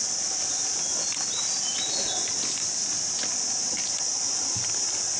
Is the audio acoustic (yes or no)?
yes